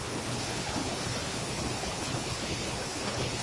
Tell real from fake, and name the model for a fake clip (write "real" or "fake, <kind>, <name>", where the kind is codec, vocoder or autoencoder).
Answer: fake, codec, HILCodec